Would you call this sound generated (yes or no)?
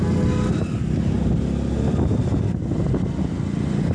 no